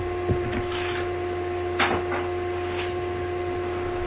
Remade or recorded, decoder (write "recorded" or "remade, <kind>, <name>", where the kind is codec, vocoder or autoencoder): recorded